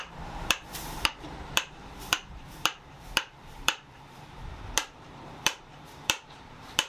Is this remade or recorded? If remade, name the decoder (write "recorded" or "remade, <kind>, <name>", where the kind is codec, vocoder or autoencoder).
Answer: remade, vocoder, BigVGAN v2